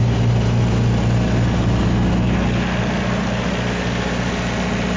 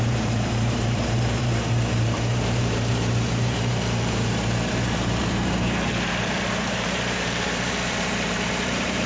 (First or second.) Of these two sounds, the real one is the first